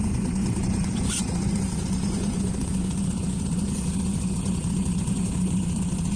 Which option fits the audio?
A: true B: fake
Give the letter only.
B